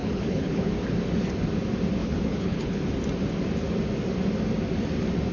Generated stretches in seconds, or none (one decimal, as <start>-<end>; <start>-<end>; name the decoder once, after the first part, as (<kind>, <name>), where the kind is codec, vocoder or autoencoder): 0.0-0.7 (codec, HILCodec); 2.0-2.8